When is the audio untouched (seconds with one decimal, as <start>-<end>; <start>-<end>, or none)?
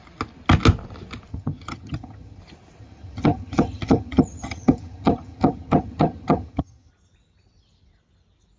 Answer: 0.0-1.3; 2.4-2.8; 6.9-8.6